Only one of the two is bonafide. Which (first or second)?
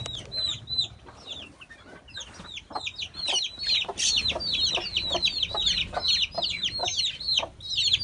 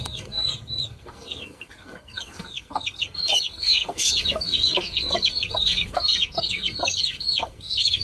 first